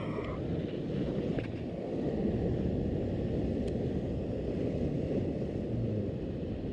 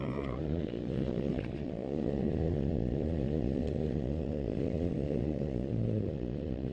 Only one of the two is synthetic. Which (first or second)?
second